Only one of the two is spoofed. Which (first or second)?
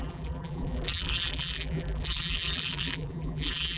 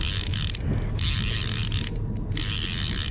first